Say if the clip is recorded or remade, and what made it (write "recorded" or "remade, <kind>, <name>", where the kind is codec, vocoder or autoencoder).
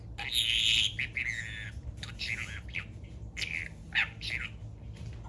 recorded